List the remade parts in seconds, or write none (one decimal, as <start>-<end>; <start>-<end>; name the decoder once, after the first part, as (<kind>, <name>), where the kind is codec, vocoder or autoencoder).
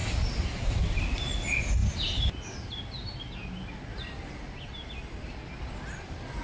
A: none